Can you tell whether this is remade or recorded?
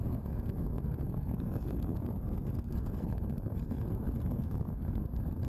remade